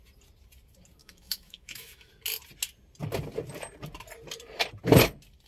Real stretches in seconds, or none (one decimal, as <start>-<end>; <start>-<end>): 0.0-1.0; 2.1-5.5